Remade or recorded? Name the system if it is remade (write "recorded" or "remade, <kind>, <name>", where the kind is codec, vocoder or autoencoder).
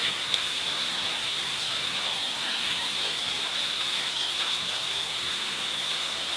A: remade, codec, SNAC